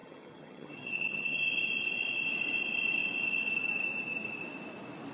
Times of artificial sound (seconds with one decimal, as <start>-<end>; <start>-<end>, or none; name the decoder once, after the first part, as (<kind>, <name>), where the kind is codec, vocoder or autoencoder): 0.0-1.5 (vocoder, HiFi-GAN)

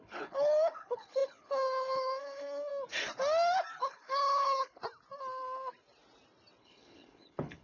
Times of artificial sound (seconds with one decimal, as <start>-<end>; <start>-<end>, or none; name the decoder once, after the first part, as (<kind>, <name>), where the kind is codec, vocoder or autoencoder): 0.0-2.7 (codec, HILCodec); 3.8-4.8; 6.6-7.6

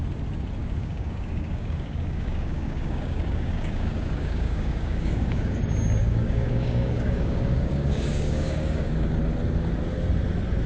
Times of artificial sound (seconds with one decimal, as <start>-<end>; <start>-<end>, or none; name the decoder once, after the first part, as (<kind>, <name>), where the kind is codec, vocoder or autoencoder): 0.6-5.6 (codec, DAC); 6.0-9.2

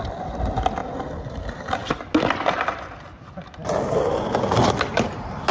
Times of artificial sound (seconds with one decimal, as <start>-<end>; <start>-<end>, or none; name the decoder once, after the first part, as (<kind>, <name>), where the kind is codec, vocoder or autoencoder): none

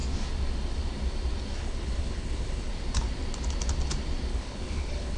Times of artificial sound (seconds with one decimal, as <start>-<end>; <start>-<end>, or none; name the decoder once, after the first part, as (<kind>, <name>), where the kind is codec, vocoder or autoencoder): 1.6-2.7 (codec, HILCodec); 4.3-5.2